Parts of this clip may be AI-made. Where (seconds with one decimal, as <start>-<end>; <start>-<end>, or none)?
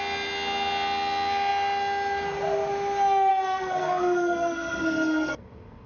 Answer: 3.3-5.9